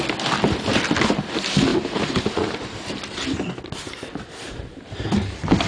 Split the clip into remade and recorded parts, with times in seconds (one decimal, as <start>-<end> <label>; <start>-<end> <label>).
0.0-1.7 recorded; 1.7-2.2 remade; 2.2-5.7 recorded